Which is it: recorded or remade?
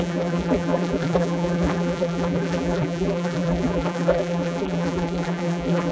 remade